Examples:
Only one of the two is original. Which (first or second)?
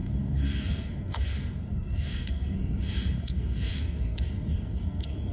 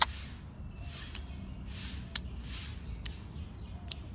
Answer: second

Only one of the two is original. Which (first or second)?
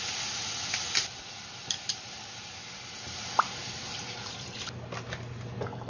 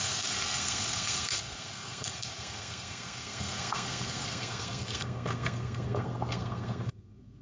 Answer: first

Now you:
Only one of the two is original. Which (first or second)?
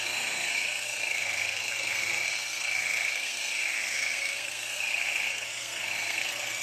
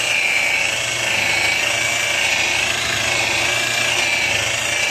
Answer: second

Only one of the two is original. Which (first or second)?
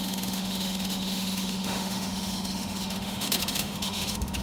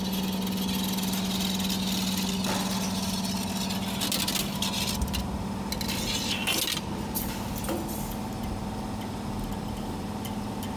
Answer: second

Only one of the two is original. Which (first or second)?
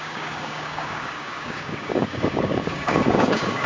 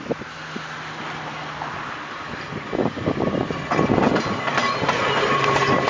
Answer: second